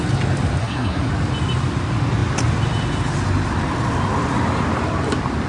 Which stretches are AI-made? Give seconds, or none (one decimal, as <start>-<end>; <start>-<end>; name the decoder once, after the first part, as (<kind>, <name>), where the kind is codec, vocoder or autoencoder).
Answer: 0.6-1.1 (codec, SNAC)